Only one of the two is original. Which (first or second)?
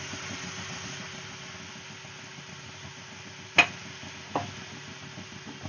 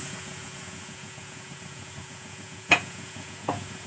first